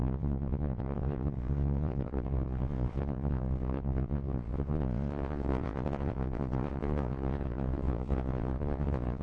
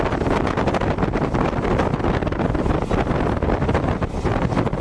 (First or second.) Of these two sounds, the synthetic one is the first